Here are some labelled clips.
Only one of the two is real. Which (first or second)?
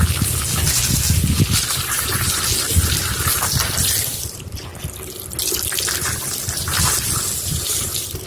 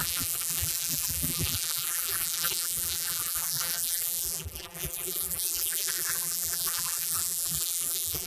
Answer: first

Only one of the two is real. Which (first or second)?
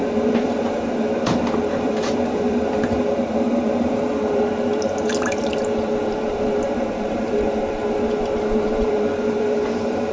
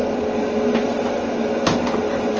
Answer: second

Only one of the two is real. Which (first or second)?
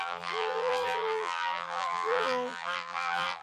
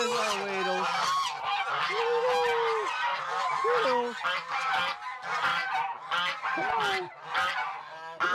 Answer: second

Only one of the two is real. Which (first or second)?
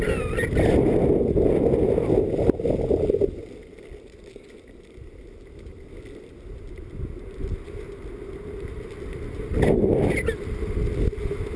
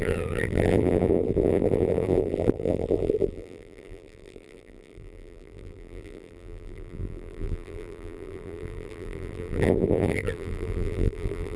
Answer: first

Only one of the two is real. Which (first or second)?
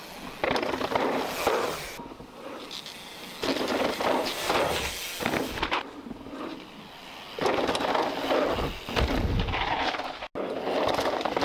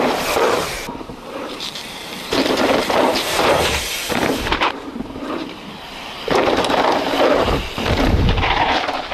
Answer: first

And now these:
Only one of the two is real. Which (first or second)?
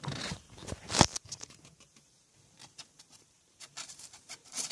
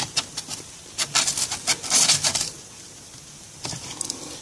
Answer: second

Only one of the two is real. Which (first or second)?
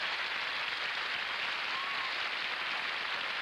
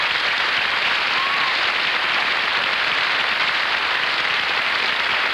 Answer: first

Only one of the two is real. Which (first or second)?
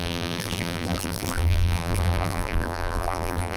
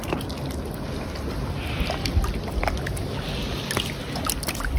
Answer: second